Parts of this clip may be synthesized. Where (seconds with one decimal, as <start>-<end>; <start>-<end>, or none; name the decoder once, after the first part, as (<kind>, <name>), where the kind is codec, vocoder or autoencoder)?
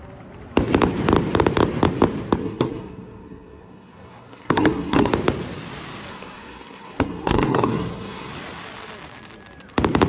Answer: 2.4-5.1 (codec, SNAC); 6.1-8.3